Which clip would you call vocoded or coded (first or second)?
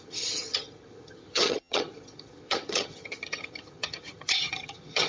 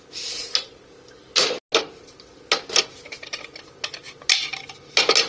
first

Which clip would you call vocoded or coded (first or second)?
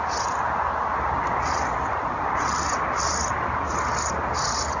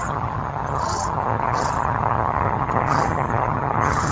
second